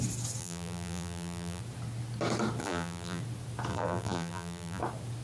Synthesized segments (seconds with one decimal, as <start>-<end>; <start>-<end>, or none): 0.4-1.6; 2.6-3.2; 3.7-4.8